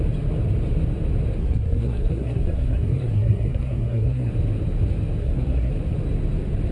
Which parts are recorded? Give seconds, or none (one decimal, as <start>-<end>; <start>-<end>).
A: 0.0-1.4; 4.3-5.2; 5.7-6.7